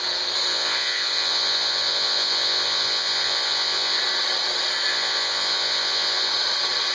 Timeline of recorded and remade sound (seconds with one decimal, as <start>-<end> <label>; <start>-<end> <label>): 0.0-0.5 recorded; 0.5-4.0 remade; 4.0-4.9 recorded; 4.9-6.3 remade; 6.3-6.9 recorded